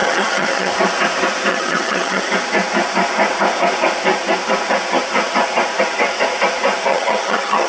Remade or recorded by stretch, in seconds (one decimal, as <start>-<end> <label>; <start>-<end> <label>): 0.0-0.7 remade; 0.7-1.5 recorded; 1.5-2.2 remade; 2.2-6.9 recorded; 6.9-7.7 remade